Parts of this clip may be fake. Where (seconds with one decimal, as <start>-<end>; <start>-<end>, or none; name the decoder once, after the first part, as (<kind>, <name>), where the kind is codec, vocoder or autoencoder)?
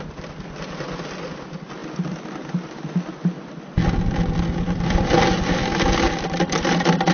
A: none